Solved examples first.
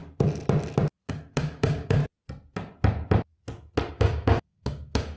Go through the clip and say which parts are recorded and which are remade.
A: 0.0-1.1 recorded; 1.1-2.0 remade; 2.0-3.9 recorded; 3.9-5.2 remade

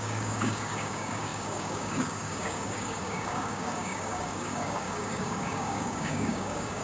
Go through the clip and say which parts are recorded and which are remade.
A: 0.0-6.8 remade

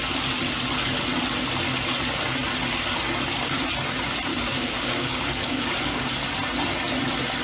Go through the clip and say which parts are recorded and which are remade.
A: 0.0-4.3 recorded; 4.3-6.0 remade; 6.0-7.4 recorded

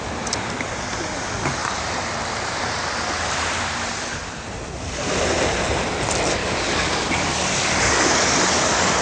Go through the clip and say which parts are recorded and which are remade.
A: 0.0-6.4 recorded; 6.4-9.0 remade

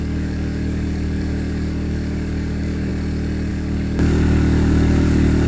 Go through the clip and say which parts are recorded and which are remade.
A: 0.0-2.9 remade; 2.9-3.5 recorded; 3.5-5.5 remade

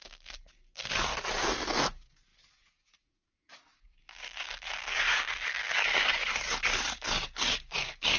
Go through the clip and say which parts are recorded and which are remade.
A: 0.0-1.1 remade; 1.1-1.8 recorded; 1.8-8.2 remade

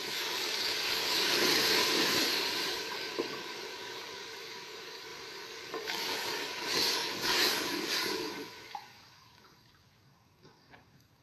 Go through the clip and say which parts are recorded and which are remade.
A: 0.0-1.8 remade; 1.8-2.7 recorded; 2.7-11.2 remade